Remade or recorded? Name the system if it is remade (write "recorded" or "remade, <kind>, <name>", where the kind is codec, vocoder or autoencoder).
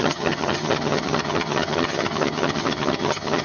remade, vocoder, HiFi-GAN